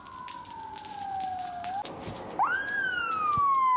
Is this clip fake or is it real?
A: real